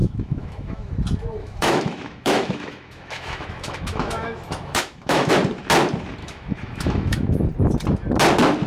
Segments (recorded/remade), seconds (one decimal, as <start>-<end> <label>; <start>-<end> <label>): 0.0-0.9 remade; 0.9-1.4 recorded; 1.4-5.3 remade; 5.3-6.2 recorded; 6.2-7.5 remade; 7.5-8.7 recorded